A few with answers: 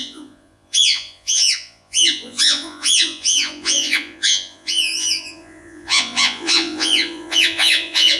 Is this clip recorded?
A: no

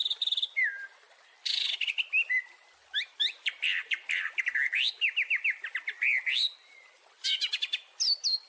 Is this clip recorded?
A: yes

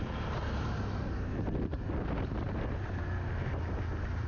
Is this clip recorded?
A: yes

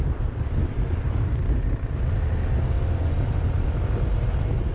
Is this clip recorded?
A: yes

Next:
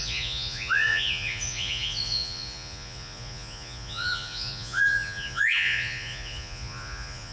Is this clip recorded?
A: no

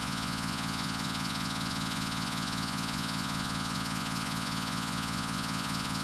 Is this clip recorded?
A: no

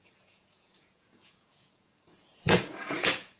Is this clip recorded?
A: no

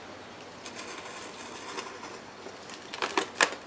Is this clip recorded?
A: yes